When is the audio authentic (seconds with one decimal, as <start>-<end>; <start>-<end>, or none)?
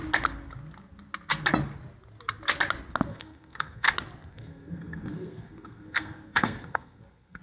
0.0-3.1; 3.9-4.3